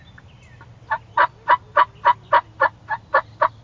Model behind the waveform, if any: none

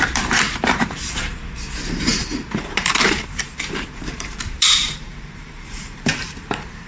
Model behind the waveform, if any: vocoder, BigVGAN v2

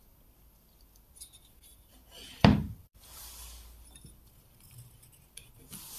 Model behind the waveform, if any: none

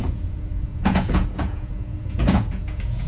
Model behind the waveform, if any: vocoder, Vocos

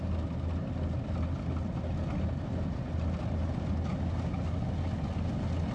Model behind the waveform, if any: none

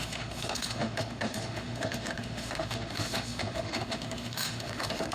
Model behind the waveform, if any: autoencoder, DAC-VAE